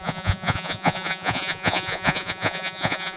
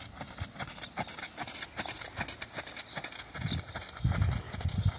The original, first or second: second